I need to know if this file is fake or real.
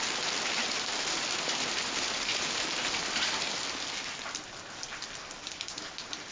fake